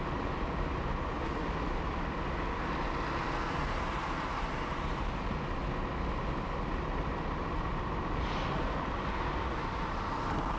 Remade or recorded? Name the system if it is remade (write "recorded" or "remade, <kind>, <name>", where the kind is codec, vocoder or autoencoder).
recorded